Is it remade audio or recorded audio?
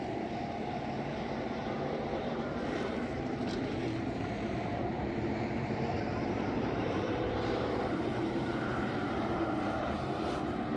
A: remade